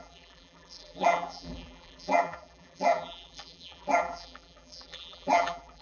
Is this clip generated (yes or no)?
yes